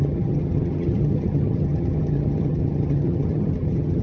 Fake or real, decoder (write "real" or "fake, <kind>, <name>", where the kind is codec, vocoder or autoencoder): fake, vocoder, HiFi-GAN